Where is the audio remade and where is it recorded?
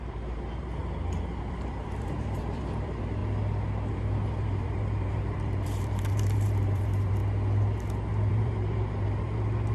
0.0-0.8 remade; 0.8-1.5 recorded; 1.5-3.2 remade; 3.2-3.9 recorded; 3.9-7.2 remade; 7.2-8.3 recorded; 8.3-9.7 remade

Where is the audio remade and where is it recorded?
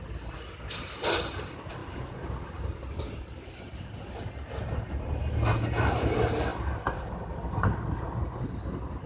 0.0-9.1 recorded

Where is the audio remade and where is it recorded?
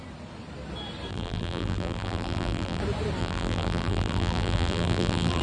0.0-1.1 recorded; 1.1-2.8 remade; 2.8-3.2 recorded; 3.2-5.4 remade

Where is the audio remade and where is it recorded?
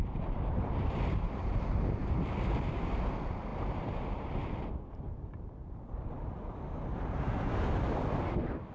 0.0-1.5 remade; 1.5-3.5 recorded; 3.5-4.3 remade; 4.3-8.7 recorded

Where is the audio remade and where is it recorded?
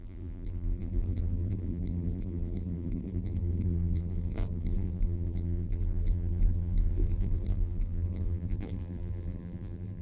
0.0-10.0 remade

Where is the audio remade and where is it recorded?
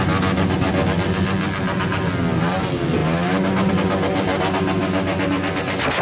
0.0-6.0 recorded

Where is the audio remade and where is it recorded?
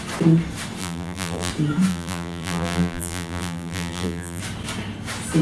0.0-0.8 recorded; 0.8-1.5 remade; 1.5-1.9 recorded; 1.9-4.4 remade; 4.4-5.4 recorded